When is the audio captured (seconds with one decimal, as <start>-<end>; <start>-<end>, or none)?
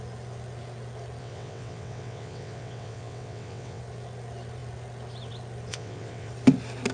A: 0.0-1.2; 3.8-5.7; 6.3-6.9